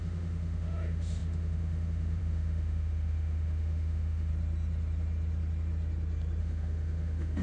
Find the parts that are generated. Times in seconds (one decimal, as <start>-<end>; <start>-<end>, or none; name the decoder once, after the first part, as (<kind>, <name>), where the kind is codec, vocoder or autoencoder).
0.0-4.3 (autoencoder, DAC-VAE); 6.4-7.4